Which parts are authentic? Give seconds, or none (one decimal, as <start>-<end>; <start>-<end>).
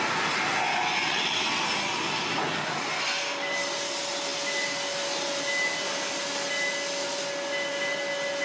0.0-1.0; 1.6-8.4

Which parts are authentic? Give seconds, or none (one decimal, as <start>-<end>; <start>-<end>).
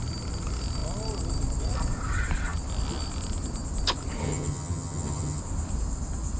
0.0-4.2; 5.4-6.4